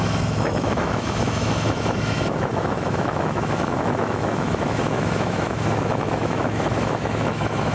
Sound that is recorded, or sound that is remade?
remade